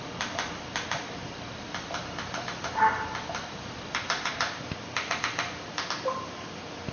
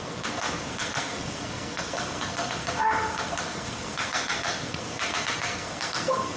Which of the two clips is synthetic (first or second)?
second